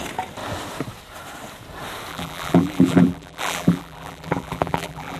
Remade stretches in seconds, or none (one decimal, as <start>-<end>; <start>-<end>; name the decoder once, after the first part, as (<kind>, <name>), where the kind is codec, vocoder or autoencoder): 2.1-5.2 (vocoder, BigVGAN v2)

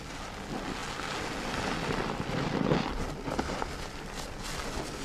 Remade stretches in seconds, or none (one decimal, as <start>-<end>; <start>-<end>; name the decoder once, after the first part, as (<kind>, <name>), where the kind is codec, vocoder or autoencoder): none

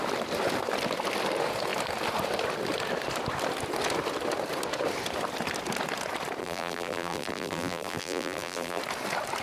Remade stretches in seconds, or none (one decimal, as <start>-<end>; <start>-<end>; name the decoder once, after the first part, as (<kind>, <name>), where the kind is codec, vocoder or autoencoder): 6.4-8.8 (vocoder, BigVGAN v2)

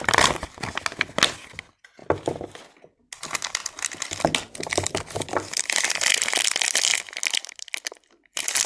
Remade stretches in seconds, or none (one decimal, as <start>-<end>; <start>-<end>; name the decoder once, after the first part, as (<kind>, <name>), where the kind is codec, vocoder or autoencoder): none

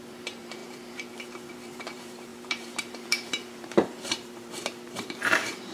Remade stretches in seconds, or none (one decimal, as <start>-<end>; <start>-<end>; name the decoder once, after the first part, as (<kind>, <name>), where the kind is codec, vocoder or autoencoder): 0.0-5.7 (vocoder, BigVGAN v2)

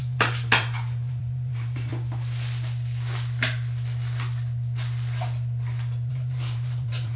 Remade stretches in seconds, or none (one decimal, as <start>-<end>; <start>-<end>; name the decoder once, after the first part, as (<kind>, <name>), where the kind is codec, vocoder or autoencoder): 0.0-1.9 (vocoder, BigVGAN v2); 6.1-7.2

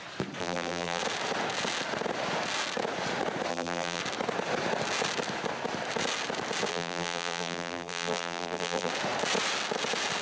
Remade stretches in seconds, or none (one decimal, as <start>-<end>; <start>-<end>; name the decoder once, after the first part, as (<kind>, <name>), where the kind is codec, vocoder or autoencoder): 0.4-1.0 (vocoder, BigVGAN v2); 3.5-4.0; 6.7-8.9